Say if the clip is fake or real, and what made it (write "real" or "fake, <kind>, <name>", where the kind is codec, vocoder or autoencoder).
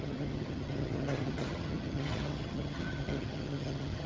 fake, vocoder, HiFi-GAN